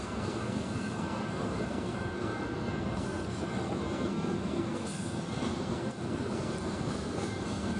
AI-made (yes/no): yes